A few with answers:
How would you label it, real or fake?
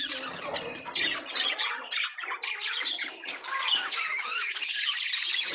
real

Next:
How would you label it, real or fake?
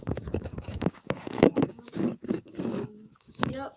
fake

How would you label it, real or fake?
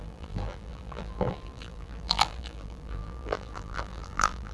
fake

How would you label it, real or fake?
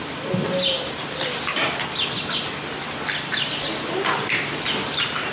real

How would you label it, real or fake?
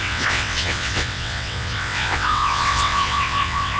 fake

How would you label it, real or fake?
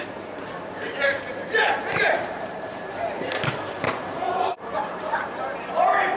fake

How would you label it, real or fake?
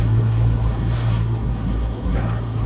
fake